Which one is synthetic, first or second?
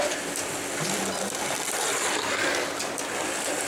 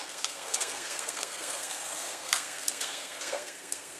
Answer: second